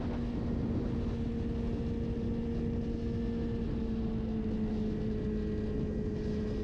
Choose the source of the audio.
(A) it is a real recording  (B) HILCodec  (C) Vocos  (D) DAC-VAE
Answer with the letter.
A